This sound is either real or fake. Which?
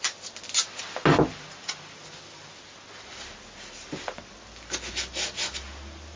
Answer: real